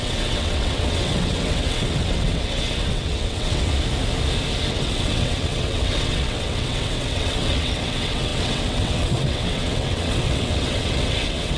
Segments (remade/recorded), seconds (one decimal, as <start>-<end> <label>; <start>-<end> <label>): 0.0-3.7 remade; 3.7-4.7 recorded; 4.7-11.6 remade